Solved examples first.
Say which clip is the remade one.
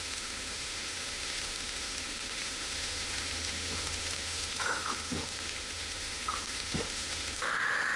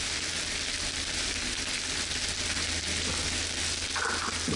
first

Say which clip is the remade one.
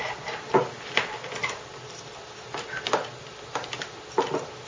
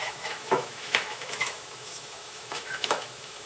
second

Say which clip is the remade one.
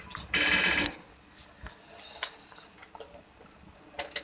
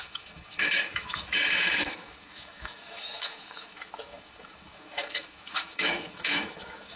second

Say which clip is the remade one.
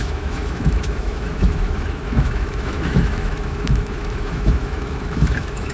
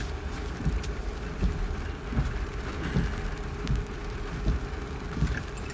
first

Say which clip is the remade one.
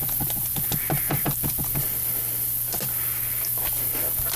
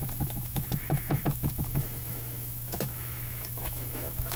second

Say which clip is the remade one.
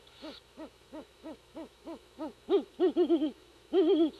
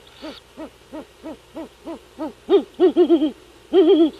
first